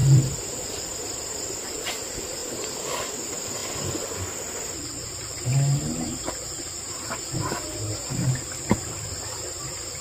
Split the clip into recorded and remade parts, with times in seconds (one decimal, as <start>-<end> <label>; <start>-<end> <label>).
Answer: 0.0-1.0 remade; 1.0-2.4 recorded; 2.4-3.1 remade; 3.1-10.0 recorded